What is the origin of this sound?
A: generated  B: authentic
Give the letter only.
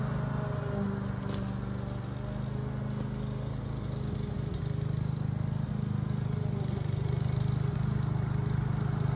B